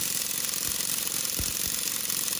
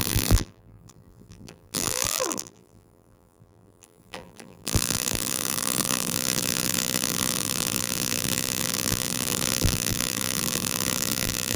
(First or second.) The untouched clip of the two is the first